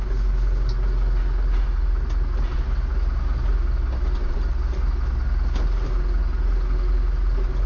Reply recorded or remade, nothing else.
recorded